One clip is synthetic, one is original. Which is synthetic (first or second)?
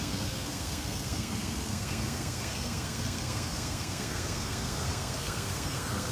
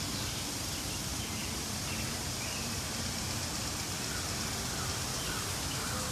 first